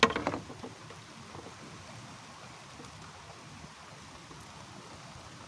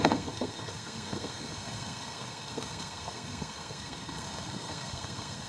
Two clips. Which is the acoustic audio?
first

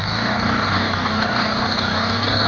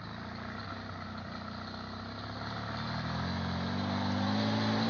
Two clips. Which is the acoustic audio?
second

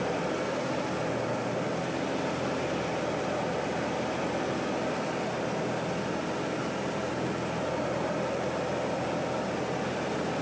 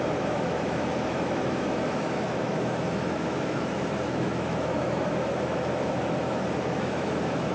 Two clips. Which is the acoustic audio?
first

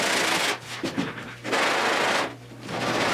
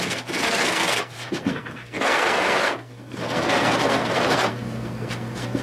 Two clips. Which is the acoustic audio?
first